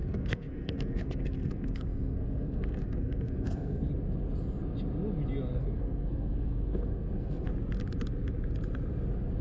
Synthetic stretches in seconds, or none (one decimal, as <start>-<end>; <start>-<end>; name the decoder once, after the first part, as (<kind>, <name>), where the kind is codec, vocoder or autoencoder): 0.0-3.9 (codec, SNAC); 5.5-7.5